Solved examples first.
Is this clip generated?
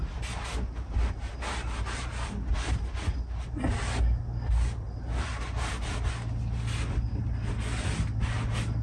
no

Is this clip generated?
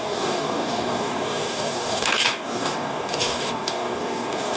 yes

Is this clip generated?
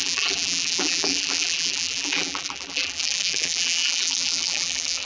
yes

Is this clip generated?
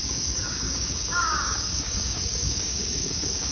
yes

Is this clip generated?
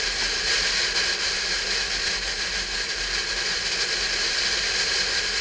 no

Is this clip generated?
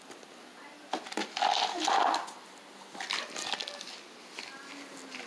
no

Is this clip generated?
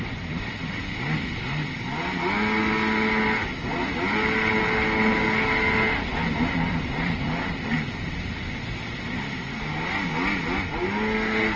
no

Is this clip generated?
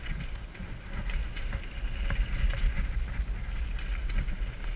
no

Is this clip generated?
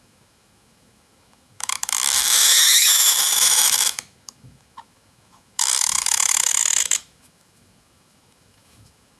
yes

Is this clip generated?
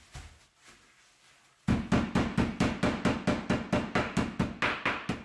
no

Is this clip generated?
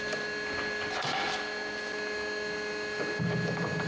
no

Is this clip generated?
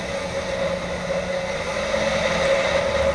no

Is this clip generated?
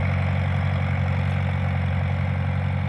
no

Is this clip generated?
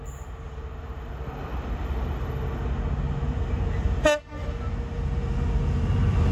no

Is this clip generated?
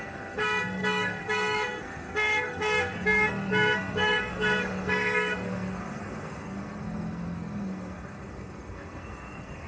yes